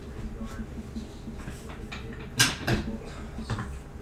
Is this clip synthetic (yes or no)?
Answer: no